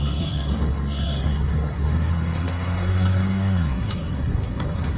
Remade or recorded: remade